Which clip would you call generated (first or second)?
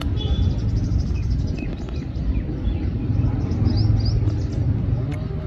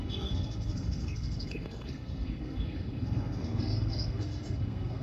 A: second